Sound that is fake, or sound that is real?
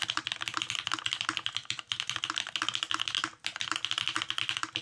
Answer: fake